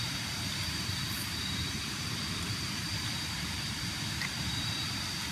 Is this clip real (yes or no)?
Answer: no